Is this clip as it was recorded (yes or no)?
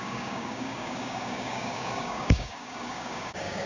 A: no